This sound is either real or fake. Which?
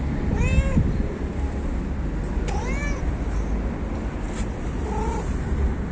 real